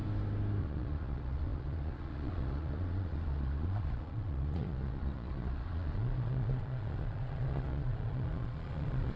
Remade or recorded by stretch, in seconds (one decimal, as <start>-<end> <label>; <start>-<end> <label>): 0.0-0.6 recorded; 0.6-9.2 remade

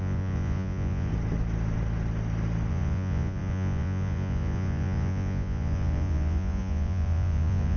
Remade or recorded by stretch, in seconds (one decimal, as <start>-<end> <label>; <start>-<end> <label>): 0.0-1.1 remade; 1.1-2.7 recorded; 2.7-7.8 remade

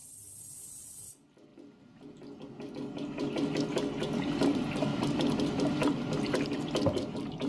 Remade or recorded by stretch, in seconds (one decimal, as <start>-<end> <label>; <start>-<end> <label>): 0.0-0.9 remade; 0.9-1.5 recorded; 1.5-2.7 remade; 2.7-4.9 recorded; 4.9-6.1 remade; 6.1-7.5 recorded

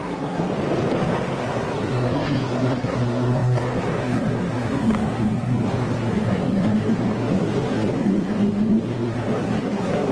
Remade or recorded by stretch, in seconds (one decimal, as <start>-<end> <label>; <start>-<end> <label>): 0.0-0.5 remade; 0.5-1.4 recorded; 1.4-10.1 remade

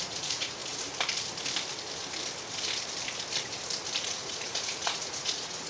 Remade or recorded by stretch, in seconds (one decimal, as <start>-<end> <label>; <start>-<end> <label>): 0.0-0.6 remade; 0.6-4.0 recorded; 4.0-5.7 remade